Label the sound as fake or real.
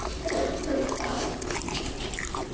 real